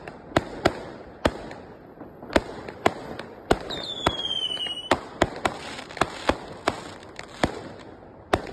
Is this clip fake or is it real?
fake